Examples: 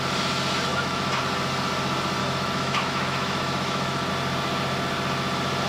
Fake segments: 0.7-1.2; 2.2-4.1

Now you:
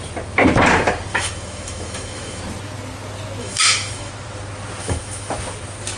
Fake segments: 1.1-2.4; 3.4-4.1; 4.8-5.3

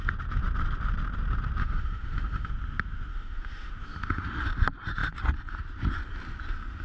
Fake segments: 1.6-2.5; 3.1-3.7

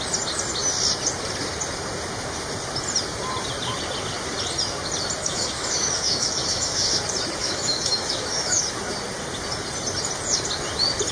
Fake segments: 5.2-7.0; 7.4-8.6

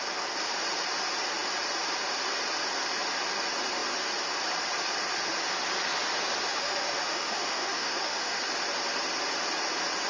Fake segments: 6.5-8.4

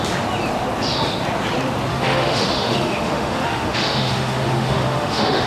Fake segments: 1.9-5.5

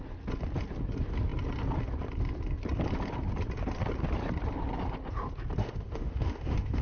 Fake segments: 5.6-6.8